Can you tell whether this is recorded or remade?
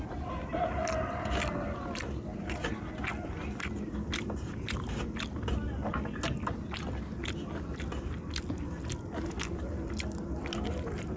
recorded